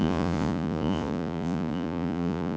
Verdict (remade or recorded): remade